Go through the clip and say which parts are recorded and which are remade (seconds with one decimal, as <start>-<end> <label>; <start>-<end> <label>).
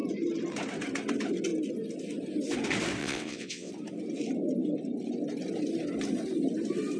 0.0-3.0 recorded; 3.0-3.7 remade; 3.7-7.0 recorded